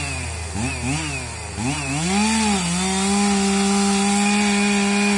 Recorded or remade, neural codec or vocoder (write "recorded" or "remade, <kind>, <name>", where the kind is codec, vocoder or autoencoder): recorded